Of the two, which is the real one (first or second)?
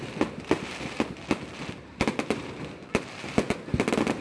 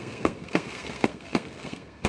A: first